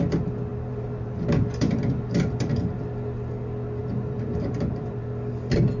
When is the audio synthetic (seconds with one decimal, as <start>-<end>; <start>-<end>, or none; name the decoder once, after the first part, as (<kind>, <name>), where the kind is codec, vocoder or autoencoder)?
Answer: 0.5-2.8 (vocoder, BigVGAN v2); 3.8-5.0